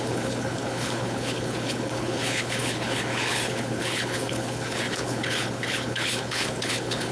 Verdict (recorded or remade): remade